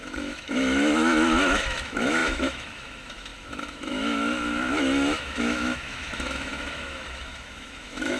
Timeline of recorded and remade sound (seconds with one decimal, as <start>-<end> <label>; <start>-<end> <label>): 0.0-8.2 remade